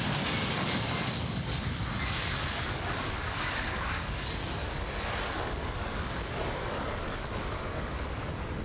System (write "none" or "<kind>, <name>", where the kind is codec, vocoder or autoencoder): codec, DAC